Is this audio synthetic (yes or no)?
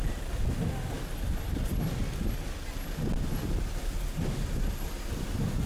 no